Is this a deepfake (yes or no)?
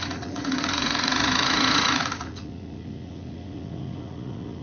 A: yes